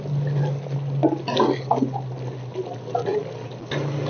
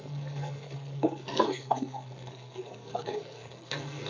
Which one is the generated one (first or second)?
second